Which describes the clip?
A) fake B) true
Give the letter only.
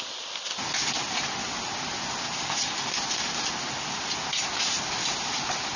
B